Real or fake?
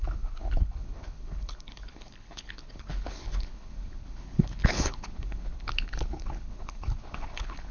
fake